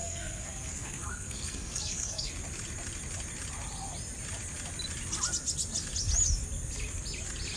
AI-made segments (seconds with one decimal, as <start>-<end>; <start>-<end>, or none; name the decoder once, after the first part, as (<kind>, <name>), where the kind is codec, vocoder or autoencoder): 0.0-2.3 (codec, SNAC)